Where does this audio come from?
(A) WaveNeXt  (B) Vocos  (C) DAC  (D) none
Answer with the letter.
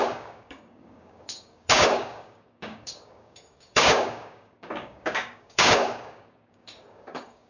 C